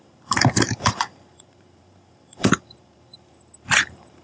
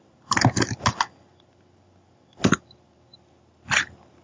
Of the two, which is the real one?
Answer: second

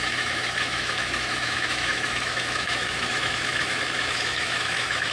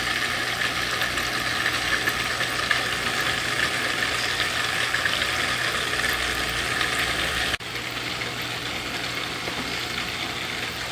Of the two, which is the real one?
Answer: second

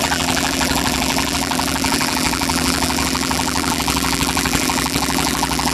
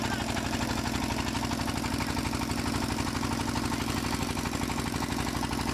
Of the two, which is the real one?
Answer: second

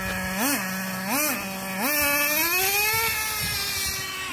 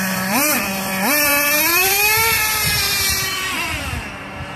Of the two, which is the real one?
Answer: first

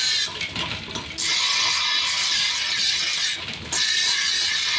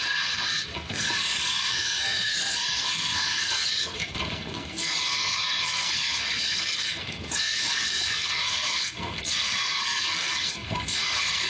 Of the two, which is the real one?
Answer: first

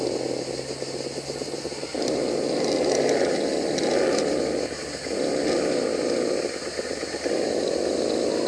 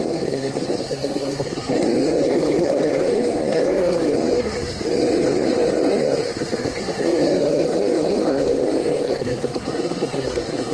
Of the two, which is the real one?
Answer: first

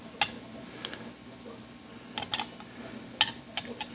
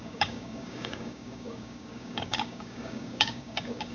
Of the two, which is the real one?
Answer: first